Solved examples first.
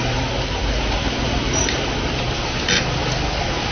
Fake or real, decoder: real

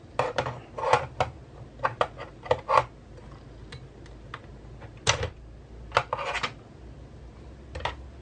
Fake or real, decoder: real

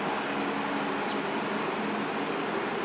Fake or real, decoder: real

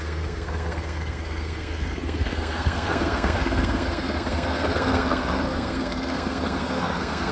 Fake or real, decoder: fake, codec, SNAC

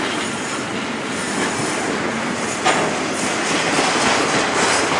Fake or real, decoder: real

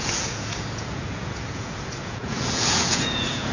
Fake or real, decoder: fake, vocoder, Vocos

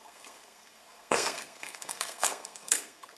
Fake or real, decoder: fake, codec, SNAC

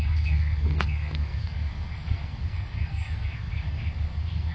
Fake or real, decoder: fake, codec, SNAC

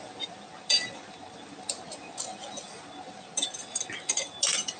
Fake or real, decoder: real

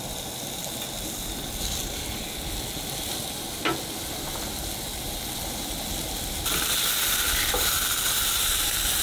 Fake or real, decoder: real